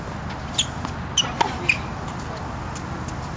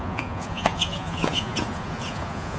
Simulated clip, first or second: second